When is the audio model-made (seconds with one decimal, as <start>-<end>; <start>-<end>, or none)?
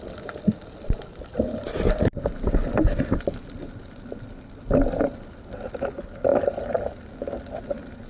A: none